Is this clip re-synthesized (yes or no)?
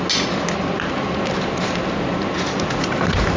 no